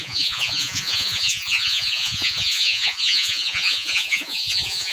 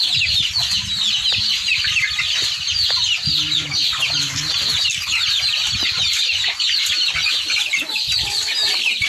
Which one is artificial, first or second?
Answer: first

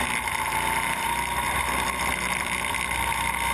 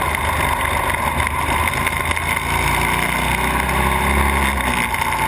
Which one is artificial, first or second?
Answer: first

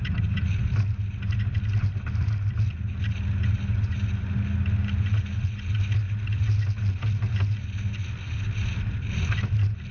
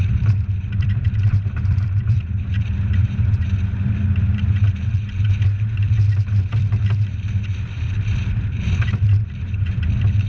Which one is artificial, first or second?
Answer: second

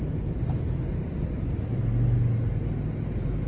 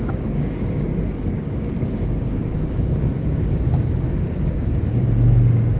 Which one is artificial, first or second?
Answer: second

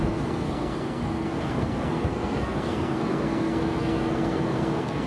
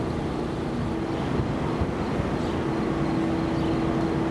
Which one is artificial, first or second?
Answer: first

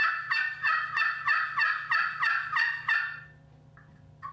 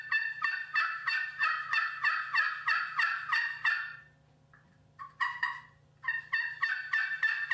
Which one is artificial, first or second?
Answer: second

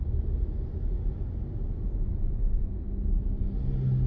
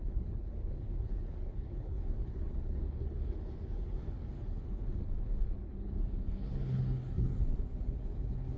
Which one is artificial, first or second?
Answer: second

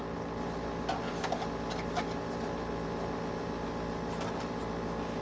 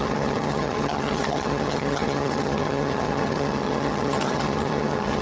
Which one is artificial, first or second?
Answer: second